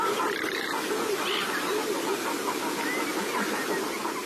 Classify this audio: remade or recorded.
recorded